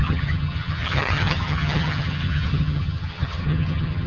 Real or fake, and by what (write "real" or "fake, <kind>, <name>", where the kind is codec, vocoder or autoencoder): fake, vocoder, HiFi-GAN